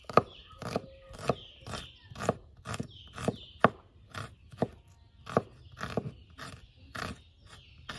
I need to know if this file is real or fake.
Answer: real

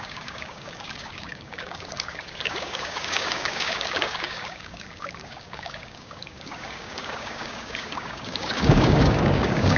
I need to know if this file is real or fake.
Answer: fake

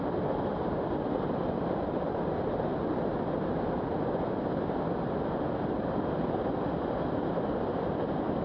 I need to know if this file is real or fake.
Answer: real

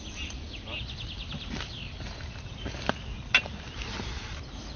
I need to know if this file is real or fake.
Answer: real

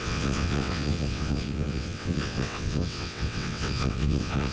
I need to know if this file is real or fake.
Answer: fake